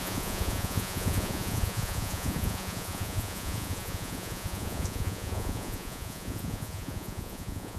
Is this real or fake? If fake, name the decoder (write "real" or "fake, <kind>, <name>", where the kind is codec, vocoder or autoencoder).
fake, vocoder, Vocos